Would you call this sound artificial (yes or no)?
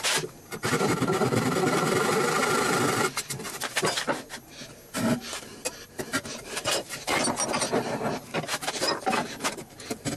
yes